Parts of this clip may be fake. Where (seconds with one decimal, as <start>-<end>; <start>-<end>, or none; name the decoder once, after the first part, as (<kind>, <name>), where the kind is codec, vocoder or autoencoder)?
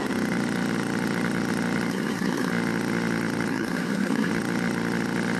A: 1.9-2.5 (codec, SNAC); 3.5-4.3